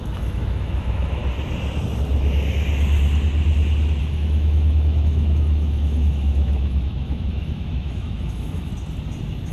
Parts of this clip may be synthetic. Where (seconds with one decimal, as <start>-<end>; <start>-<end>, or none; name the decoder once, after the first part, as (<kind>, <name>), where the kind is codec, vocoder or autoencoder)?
0.0-1.2 (autoencoder, DAC-VAE); 4.0-8.7